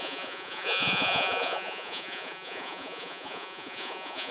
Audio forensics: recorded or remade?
remade